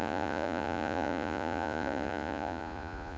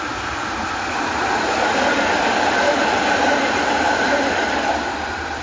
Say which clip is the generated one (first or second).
first